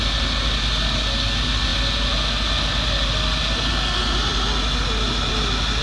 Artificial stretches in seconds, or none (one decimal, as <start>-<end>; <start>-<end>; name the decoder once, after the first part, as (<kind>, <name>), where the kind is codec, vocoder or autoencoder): none